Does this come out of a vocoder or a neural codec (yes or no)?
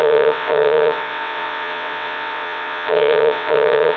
yes